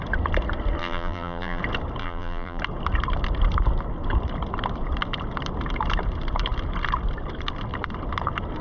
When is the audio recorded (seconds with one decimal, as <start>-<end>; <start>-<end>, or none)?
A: 0.0-0.8; 1.6-2.0; 2.6-8.6